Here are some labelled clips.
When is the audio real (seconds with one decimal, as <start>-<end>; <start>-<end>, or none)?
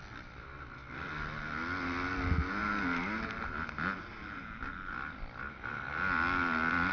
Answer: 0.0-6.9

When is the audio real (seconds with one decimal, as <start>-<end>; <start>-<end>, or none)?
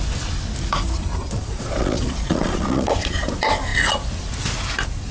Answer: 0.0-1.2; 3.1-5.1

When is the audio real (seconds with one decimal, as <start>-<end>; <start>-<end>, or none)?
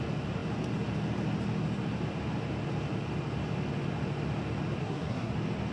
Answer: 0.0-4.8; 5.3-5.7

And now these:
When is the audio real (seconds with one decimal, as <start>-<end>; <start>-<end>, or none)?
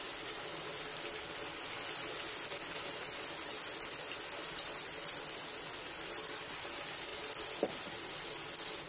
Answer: 0.0-8.9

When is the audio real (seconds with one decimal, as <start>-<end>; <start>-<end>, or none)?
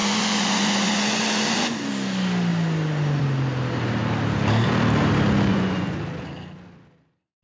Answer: 1.9-5.5; 6.0-7.4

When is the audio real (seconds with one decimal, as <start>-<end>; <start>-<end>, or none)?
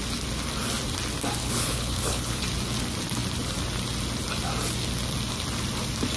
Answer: 0.0-1.4; 2.4-6.2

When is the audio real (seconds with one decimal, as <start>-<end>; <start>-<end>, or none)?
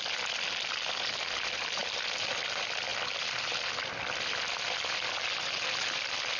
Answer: 0.0-6.4